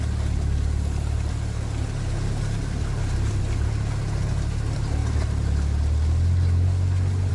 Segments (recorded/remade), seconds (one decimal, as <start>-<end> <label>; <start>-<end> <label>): 0.0-7.3 recorded